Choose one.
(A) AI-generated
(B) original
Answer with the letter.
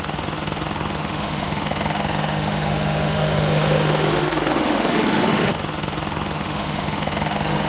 A